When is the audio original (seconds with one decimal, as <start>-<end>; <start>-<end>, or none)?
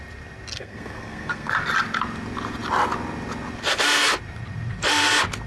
0.0-0.5; 1.5-5.5